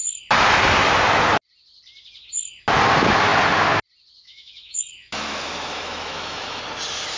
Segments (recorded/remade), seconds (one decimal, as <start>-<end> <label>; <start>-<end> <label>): 0.0-4.2 recorded; 4.2-6.6 remade; 6.6-7.2 recorded

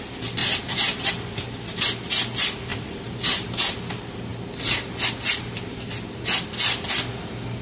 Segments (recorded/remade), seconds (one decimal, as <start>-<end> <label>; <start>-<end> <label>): 0.0-0.4 recorded; 0.4-1.1 remade; 1.1-2.7 recorded; 2.7-3.6 remade; 3.6-7.6 recorded

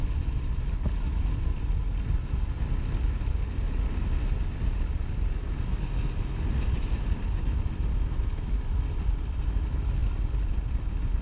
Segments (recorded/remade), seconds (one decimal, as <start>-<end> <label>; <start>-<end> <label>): 0.0-11.2 recorded

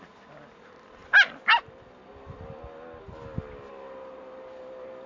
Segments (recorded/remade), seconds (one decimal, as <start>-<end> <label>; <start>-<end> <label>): 0.0-5.1 recorded

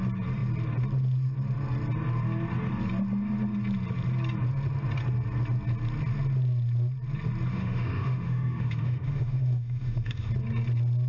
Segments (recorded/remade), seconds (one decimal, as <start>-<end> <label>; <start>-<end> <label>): 0.0-7.5 recorded; 7.5-10.3 remade; 10.3-11.1 recorded

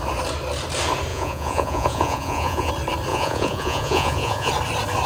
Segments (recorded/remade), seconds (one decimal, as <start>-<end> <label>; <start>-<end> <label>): 0.0-1.1 recorded; 1.1-2.7 remade; 2.7-3.1 recorded; 3.1-4.5 remade; 4.5-5.1 recorded

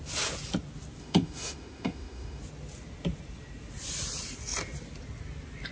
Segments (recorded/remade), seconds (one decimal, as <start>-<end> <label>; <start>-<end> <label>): 0.0-1.0 recorded; 1.0-2.4 remade; 2.4-5.7 recorded

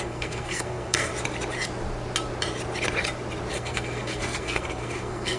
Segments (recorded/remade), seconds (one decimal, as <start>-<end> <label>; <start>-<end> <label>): 0.0-1.1 remade; 1.1-3.5 recorded; 3.5-5.4 remade